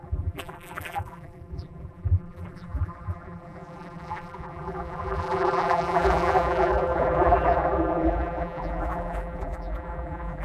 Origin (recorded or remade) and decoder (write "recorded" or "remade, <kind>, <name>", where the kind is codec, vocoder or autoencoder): remade, vocoder, BigVGAN v2